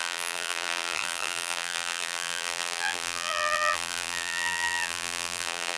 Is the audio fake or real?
fake